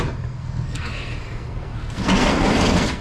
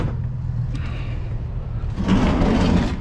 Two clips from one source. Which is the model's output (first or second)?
first